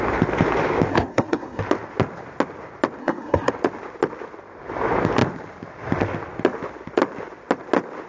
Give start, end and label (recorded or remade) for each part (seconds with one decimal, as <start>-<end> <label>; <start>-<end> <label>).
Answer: 0.0-0.9 recorded; 0.9-1.6 remade; 1.6-3.0 recorded; 3.0-3.5 remade; 3.5-8.1 recorded